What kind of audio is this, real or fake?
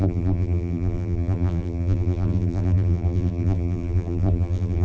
fake